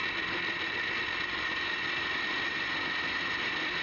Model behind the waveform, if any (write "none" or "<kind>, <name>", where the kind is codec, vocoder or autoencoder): none